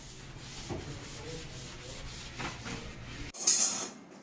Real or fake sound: real